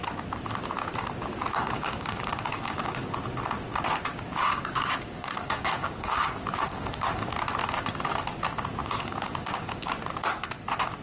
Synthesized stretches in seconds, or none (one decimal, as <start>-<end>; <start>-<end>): 1.5-3.0; 4.1-6.2; 6.7-7.3; 8.8-9.9